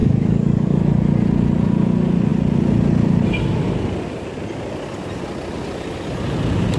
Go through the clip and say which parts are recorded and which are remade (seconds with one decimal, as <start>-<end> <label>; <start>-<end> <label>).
0.0-0.8 remade; 0.8-6.8 recorded